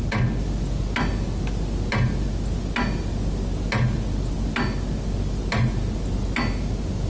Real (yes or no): yes